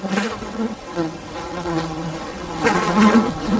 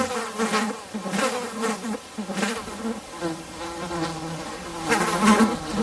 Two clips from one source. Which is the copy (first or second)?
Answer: first